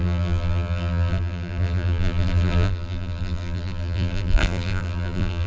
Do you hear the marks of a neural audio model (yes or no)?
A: yes